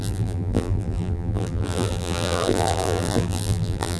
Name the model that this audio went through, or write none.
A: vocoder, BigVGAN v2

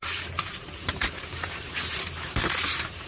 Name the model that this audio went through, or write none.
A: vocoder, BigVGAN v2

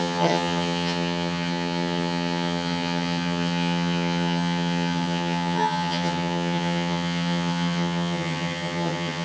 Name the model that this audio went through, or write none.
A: vocoder, HiFi-GAN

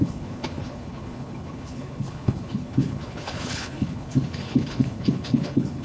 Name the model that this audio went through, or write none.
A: codec, HILCodec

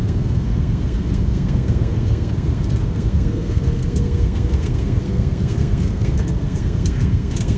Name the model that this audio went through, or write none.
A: codec, SNAC